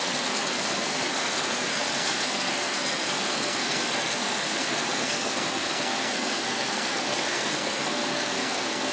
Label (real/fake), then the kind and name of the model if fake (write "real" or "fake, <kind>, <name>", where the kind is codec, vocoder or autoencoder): fake, codec, SNAC